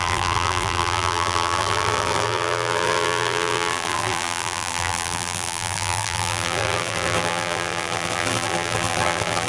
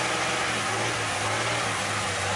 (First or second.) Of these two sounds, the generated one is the first